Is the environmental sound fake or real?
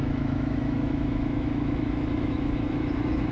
fake